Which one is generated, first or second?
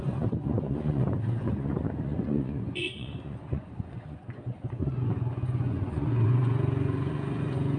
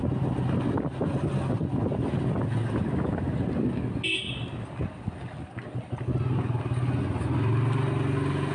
first